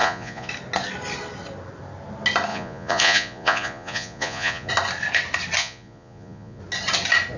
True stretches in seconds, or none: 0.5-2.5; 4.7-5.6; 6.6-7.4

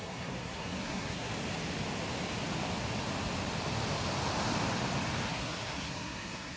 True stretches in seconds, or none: 1.3-5.3

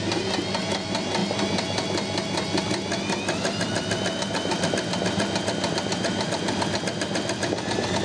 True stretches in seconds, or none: 0.0-8.0

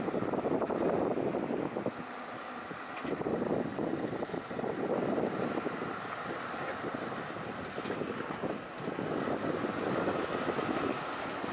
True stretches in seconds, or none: 0.0-11.5

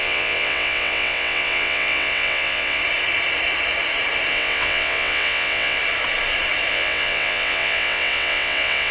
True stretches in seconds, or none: 2.8-4.3; 5.8-6.7